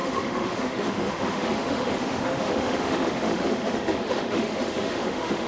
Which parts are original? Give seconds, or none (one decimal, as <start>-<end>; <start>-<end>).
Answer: none